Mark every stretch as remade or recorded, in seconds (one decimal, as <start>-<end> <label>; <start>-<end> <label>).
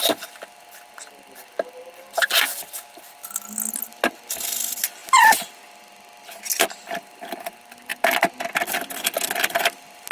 0.0-10.1 recorded